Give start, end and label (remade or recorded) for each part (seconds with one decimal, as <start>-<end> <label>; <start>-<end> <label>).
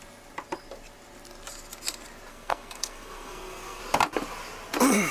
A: 0.0-2.3 recorded; 2.3-3.8 remade; 3.8-5.1 recorded